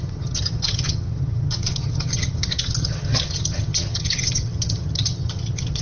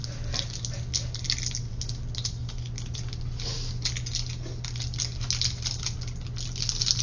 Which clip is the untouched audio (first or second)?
second